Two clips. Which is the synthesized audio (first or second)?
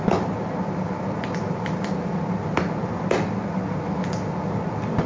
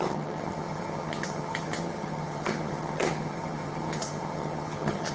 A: second